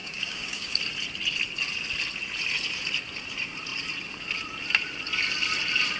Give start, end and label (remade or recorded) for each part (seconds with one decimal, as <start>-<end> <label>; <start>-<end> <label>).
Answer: 0.0-0.8 remade; 0.8-6.0 recorded